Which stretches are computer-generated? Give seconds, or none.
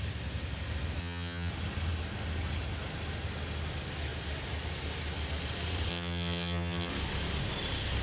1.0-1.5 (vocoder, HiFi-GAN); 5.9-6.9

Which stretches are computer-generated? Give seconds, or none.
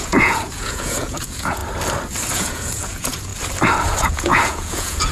0.0-1.6 (vocoder, Vocos); 2.3-3.3; 4.0-5.1